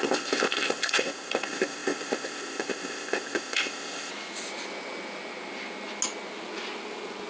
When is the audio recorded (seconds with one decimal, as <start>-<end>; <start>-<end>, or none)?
4.1-7.3